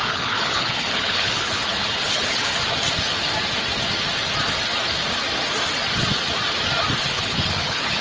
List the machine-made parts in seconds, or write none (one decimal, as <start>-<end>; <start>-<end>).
0.0-2.5; 7.0-8.0